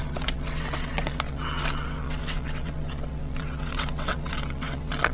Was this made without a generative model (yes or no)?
no